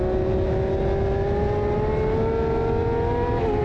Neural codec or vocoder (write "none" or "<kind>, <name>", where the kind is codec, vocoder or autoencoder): none